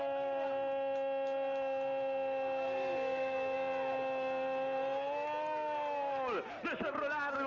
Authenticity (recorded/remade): recorded